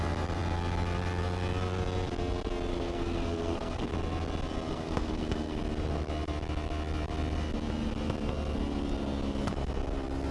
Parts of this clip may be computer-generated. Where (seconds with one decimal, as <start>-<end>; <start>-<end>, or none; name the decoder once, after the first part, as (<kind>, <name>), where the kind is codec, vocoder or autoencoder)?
2.7-3.9 (codec, SNAC); 4.7-5.6